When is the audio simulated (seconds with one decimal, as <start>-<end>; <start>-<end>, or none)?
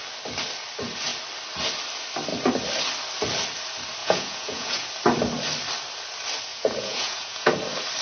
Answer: 4.0-4.9; 6.5-7.5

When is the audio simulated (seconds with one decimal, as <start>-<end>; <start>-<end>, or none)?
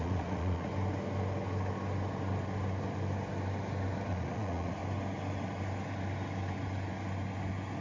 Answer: 0.0-0.7; 4.1-4.8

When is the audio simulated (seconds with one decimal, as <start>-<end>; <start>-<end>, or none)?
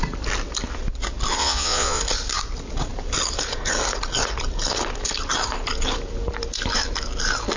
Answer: 1.4-2.0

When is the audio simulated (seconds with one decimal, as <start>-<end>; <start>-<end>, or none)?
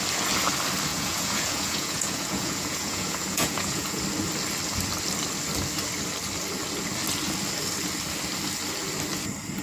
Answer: 0.9-4.0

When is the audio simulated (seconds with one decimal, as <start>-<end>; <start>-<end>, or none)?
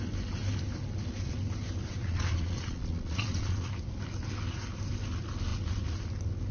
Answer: 2.0-3.7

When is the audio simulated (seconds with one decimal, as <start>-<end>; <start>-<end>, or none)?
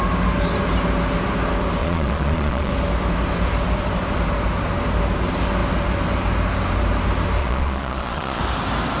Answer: 1.8-2.7; 7.4-8.4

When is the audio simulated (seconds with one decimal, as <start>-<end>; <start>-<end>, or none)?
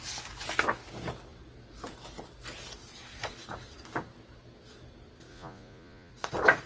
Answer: 5.3-6.1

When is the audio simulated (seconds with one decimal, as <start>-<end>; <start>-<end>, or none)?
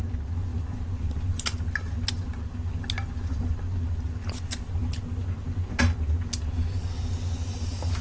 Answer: none